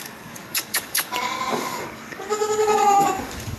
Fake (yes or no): yes